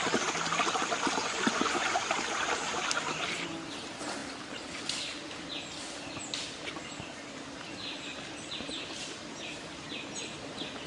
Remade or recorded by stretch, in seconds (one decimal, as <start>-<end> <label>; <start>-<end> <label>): 0.0-1.2 recorded; 1.2-2.1 remade; 2.1-10.9 recorded